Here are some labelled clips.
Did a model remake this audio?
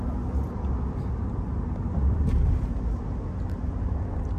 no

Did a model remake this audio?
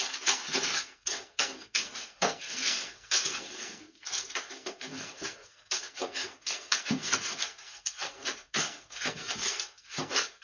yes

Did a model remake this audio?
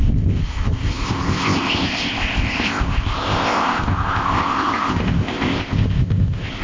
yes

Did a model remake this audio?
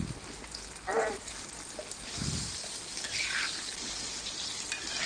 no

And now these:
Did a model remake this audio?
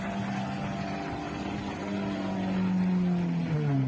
no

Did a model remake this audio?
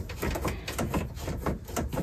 no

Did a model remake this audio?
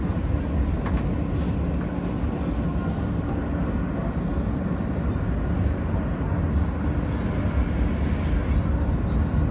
no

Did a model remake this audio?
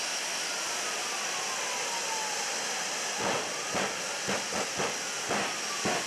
no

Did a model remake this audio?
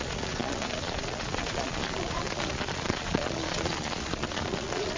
yes